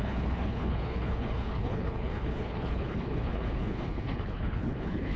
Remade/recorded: remade